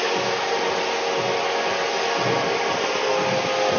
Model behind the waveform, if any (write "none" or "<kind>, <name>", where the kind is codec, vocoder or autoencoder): none